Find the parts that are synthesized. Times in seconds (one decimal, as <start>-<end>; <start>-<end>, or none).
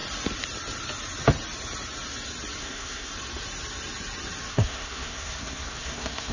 2.6-3.1; 4.5-6.3